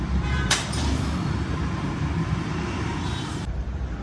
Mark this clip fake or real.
fake